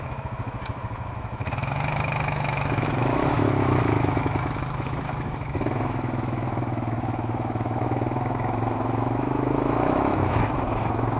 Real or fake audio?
fake